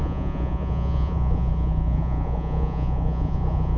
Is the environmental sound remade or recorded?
remade